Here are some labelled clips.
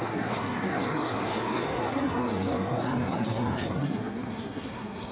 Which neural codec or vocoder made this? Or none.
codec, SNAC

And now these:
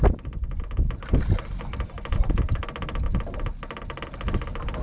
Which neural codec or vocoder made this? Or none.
none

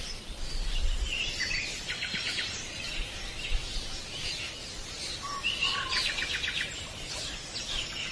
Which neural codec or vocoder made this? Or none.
none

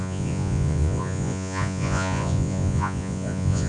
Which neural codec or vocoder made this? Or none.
vocoder, Vocos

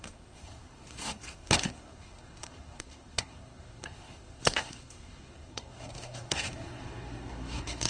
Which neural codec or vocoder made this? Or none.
codec, SNAC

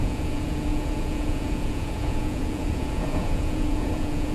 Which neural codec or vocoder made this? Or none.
vocoder, Vocos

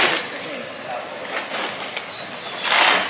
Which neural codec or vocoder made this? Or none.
none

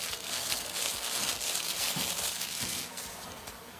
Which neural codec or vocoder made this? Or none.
codec, SNAC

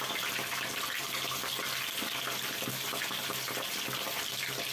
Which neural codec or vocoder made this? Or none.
vocoder, BigVGAN v2